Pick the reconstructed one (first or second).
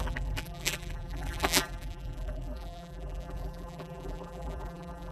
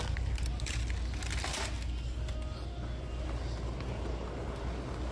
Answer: first